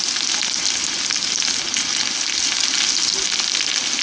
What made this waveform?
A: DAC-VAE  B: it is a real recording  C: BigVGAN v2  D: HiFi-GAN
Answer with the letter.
B